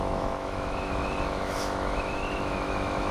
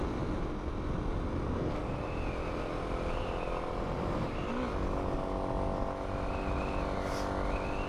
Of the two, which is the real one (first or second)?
second